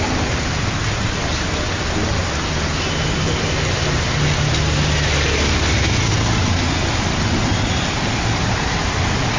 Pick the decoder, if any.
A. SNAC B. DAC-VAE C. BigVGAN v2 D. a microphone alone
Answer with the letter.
D